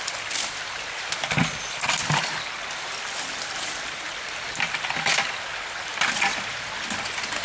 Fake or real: real